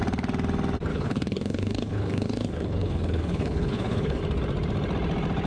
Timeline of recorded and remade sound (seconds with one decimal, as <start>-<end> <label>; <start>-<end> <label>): 0.0-0.9 recorded; 0.9-4.2 remade; 4.2-5.5 recorded